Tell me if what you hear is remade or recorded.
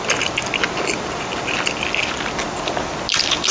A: recorded